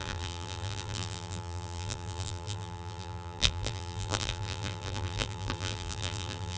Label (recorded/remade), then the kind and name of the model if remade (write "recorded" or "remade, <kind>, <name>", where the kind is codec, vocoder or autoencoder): remade, vocoder, BigVGAN v2